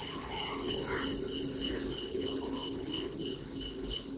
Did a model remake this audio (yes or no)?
yes